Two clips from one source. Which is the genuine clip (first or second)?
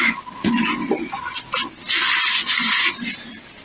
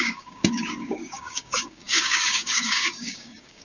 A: first